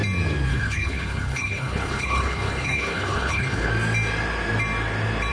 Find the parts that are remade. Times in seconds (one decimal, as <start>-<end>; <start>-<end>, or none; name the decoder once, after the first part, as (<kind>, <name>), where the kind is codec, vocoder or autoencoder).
0.5-3.7 (codec, HILCodec)